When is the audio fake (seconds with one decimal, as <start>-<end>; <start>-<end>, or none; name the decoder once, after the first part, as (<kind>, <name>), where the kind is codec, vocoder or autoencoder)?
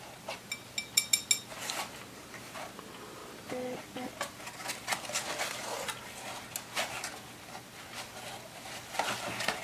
none